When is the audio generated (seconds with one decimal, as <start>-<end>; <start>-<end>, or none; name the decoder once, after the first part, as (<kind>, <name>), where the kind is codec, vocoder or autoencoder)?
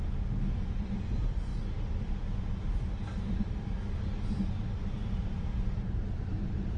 none